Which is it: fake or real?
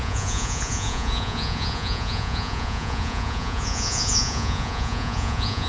fake